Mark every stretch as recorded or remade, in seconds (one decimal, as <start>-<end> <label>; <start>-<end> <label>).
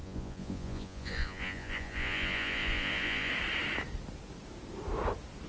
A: 0.0-3.3 remade; 3.3-5.5 recorded